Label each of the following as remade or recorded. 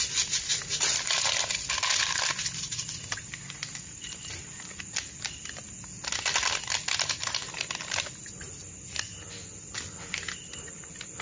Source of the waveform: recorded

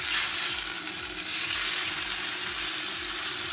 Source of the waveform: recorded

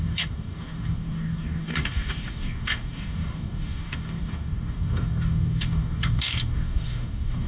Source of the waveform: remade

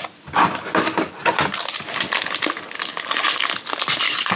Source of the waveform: recorded